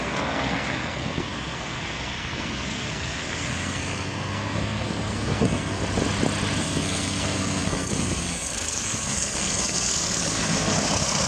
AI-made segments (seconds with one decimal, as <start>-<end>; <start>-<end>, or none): 0.0-5.8; 6.6-11.3